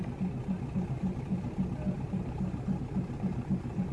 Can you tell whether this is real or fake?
real